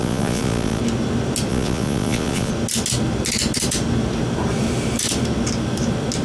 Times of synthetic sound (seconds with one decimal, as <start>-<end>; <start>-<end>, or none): 0.0-0.8; 1.5-2.5

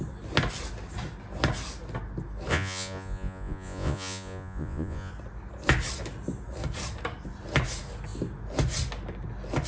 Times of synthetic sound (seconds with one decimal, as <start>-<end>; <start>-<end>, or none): 2.5-5.1

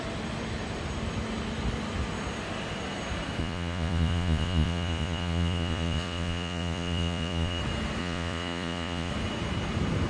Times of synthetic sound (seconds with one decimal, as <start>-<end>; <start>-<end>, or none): 3.4-7.6; 8.0-9.1

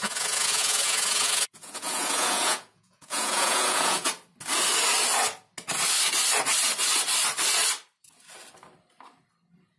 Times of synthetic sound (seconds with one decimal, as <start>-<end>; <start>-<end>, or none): 0.0-4.1

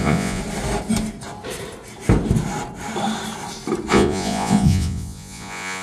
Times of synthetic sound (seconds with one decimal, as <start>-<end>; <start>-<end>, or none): 0.0-0.4; 3.9-5.8

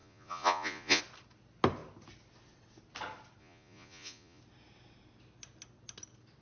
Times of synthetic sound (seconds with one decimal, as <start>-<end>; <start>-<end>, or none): 0.0-1.0; 3.4-4.4

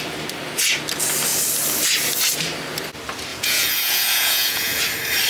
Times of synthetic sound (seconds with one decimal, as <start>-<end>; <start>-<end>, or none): 3.3-4.8

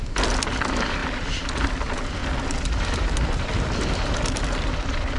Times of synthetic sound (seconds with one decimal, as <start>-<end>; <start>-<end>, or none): none